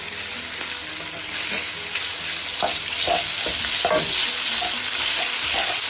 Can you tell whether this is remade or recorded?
recorded